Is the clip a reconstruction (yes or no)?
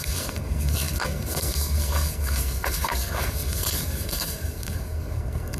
yes